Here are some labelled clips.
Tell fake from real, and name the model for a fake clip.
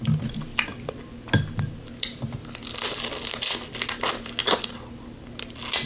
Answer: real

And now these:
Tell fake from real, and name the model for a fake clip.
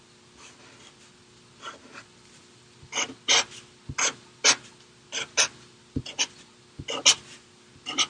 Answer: real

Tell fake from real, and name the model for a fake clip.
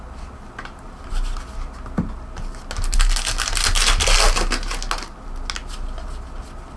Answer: real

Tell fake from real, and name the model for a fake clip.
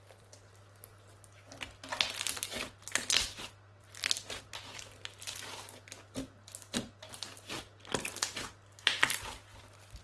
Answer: real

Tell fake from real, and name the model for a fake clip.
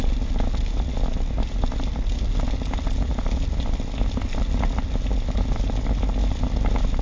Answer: real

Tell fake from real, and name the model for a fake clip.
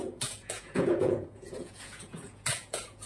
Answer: fake, vocoder, Vocos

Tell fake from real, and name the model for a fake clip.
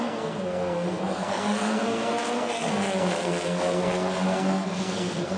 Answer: fake, codec, SNAC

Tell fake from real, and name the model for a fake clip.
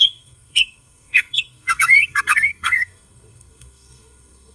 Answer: fake, codec, SNAC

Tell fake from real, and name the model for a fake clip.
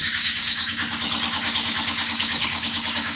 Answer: fake, codec, DAC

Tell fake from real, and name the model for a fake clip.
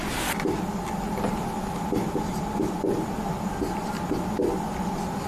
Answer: real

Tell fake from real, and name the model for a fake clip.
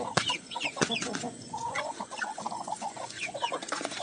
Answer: fake, vocoder, Vocos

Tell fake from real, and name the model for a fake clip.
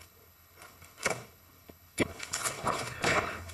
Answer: fake, codec, HILCodec